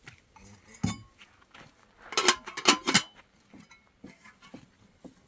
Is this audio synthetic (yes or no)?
no